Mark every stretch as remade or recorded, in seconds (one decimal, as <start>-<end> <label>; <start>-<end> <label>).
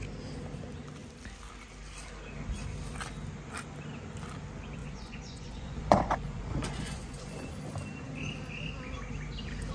0.0-4.8 recorded; 4.8-7.5 remade; 7.5-9.7 recorded